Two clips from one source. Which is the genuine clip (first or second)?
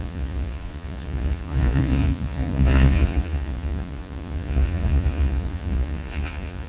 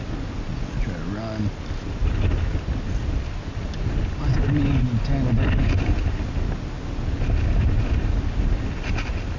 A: second